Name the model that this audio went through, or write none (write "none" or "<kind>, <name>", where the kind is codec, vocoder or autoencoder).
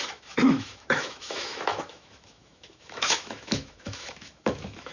autoencoder, DAC-VAE